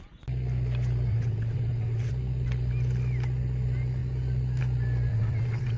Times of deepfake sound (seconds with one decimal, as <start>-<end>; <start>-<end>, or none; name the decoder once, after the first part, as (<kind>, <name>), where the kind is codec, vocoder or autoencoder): 1.1-2.1 (vocoder, WaveNeXt); 5.1-5.8